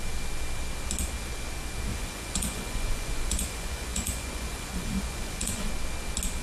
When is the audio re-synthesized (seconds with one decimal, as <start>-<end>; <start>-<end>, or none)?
1.9-5.7